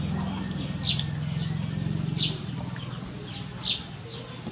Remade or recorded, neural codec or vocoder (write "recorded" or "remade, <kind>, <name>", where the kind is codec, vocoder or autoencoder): recorded